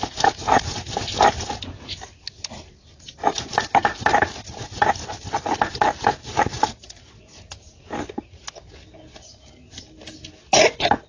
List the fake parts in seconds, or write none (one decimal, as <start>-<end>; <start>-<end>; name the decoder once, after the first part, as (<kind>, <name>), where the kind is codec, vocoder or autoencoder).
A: 6.2-7.4 (vocoder, Vocos)